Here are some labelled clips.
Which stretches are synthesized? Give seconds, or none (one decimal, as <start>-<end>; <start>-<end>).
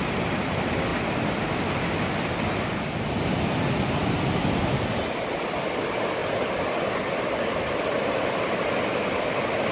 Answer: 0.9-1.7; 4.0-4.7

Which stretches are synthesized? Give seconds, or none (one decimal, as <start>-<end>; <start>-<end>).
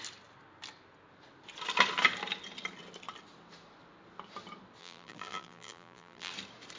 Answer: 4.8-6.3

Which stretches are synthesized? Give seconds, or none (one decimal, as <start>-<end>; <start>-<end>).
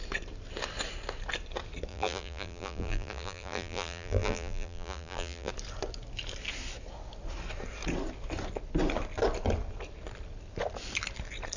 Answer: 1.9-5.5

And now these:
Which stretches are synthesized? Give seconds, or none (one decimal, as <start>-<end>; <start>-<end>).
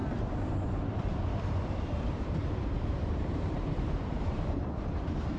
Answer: 0.8-5.4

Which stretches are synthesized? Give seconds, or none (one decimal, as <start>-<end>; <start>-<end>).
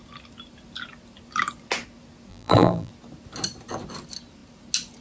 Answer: 2.3-2.9